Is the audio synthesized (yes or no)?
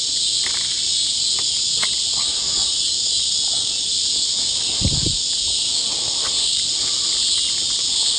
no